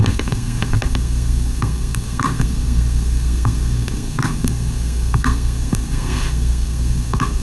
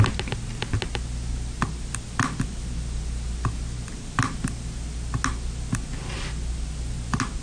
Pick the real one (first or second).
second